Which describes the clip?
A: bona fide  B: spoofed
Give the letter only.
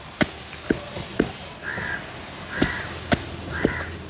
A